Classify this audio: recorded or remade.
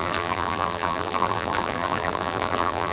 remade